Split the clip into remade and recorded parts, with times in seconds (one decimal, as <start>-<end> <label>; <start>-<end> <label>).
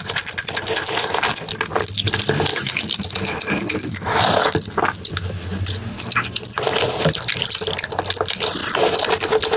0.0-2.5 recorded; 2.5-4.2 remade; 4.2-9.6 recorded